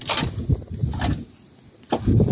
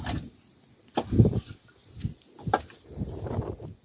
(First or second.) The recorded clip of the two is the first